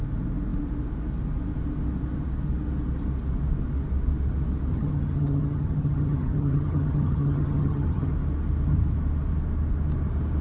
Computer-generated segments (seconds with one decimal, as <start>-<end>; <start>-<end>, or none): 4.7-8.1